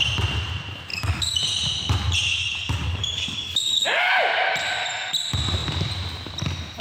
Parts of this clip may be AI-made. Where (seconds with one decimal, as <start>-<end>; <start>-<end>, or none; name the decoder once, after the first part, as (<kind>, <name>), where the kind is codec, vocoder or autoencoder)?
0.9-1.4 (codec, DAC); 2.3-4.1